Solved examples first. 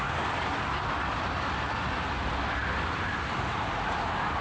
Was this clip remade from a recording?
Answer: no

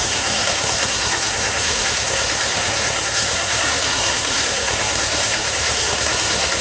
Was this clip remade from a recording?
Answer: yes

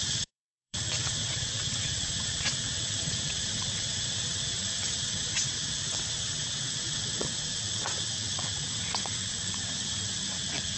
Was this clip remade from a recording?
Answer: yes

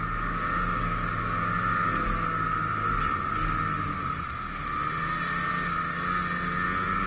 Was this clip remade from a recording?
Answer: no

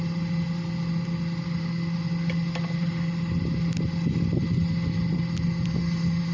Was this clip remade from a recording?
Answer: no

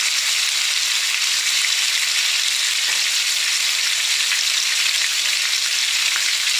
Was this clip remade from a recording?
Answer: no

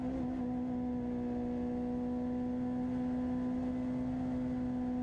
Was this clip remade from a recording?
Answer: no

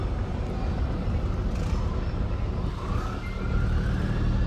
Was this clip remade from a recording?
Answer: no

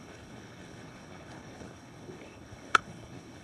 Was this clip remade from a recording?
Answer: yes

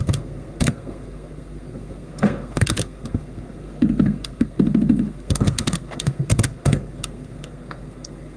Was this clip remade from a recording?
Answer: yes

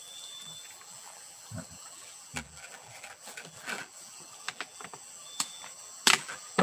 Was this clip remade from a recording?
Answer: yes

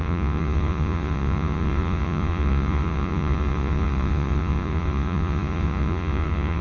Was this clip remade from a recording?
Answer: yes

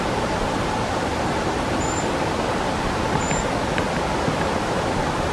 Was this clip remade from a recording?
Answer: no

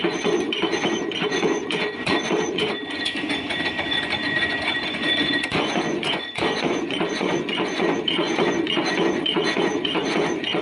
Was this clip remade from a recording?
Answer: yes